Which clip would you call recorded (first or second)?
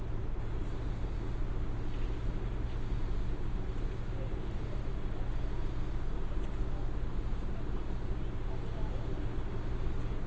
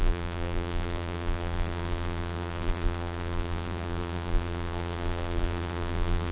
first